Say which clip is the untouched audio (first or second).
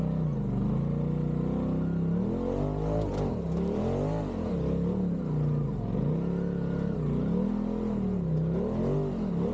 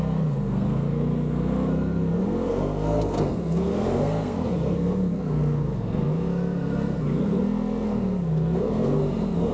first